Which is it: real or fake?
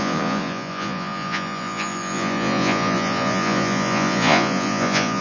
fake